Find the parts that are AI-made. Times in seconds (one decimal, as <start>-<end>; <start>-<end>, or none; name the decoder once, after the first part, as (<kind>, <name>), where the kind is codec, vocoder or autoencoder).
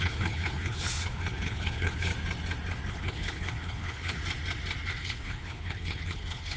0.0-2.1 (codec, HILCodec); 2.9-4.2; 4.9-6.6